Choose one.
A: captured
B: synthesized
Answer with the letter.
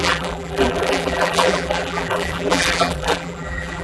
B